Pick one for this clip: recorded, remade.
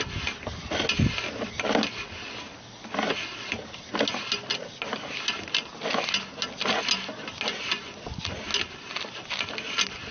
recorded